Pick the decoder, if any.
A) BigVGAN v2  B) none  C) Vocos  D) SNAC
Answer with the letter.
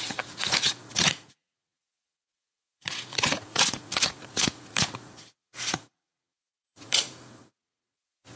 C